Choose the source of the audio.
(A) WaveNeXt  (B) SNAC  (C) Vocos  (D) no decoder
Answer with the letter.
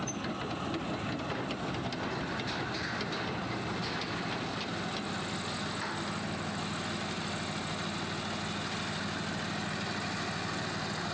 D